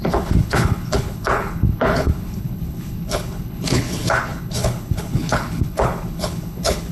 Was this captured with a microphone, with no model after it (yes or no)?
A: no